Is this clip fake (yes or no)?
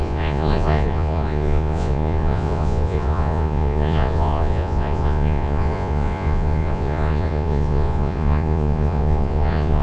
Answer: yes